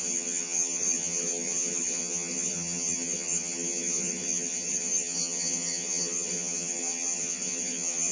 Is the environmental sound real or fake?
fake